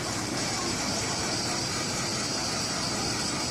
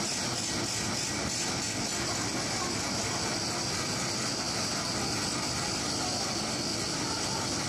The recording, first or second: second